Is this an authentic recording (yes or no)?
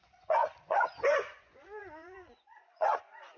no